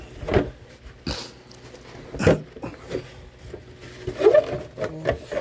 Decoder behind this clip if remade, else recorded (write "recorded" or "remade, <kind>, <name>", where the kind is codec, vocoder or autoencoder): recorded